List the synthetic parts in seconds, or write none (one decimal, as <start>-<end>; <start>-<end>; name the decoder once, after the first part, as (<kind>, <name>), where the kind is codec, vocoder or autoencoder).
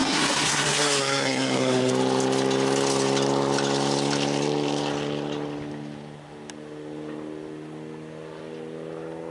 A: 0.0-1.9 (codec, SNAC)